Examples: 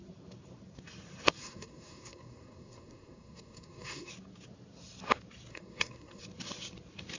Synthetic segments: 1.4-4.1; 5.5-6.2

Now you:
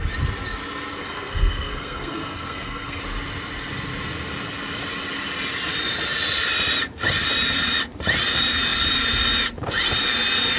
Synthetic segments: 1.0-3.0

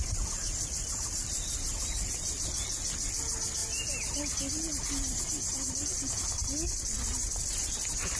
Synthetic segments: none

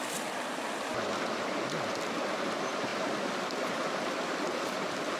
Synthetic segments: none

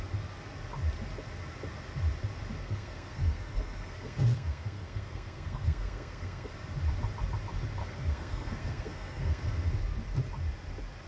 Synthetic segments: 2.6-6.5; 7.8-9.7